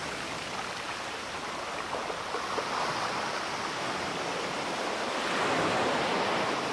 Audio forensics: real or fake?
real